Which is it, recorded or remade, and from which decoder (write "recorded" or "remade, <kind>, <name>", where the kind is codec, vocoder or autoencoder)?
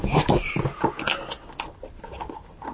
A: recorded